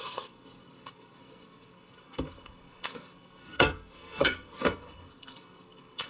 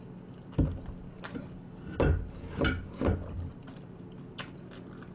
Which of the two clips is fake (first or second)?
first